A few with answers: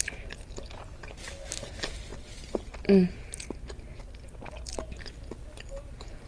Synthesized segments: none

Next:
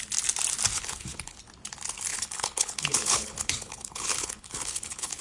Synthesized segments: 0.7-1.4 (codec, HILCodec); 2.1-5.2

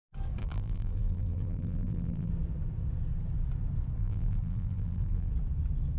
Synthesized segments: 0.4-2.3 (vocoder, BigVGAN v2); 4.0-5.3

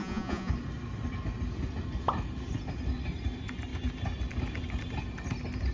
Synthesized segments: 0.0-0.5 (vocoder, Vocos)

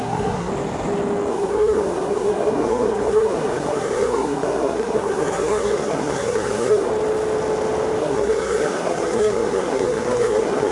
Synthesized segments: 0.0-0.5 (codec, SNAC); 1.3-6.9; 8.0-10.7

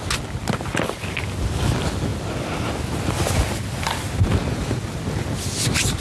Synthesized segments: none

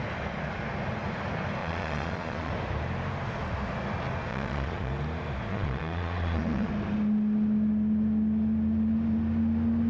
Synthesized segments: 1.6-2.5 (vocoder, Vocos); 4.3-4.9; 5.5-6.7